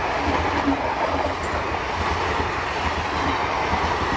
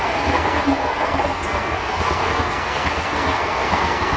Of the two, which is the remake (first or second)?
second